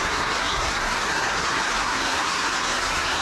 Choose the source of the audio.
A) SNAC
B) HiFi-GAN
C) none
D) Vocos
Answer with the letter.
A